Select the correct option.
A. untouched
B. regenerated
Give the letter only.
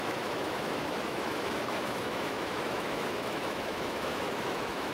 B